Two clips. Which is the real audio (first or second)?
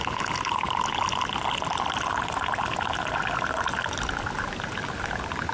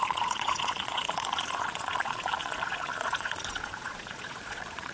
first